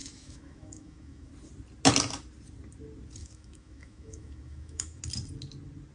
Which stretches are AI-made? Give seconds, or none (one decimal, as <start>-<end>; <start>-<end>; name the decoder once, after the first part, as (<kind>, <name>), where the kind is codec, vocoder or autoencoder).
0.0-1.3 (autoencoder, DAC-VAE); 3.2-5.0